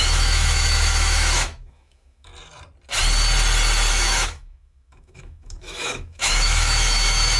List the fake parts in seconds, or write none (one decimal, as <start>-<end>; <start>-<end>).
0.0-2.3; 3.9-7.4